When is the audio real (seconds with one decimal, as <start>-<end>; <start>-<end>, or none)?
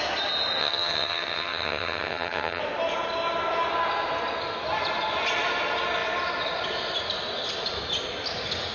0.0-0.6; 2.6-8.7